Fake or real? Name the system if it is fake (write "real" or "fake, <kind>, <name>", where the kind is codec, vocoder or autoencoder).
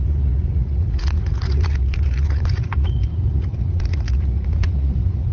fake, vocoder, Vocos